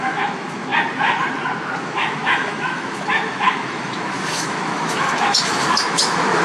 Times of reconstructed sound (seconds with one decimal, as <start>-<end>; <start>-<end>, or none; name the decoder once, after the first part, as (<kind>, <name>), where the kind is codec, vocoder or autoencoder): 0.0-0.7 (autoencoder, DAC-VAE); 1.8-6.4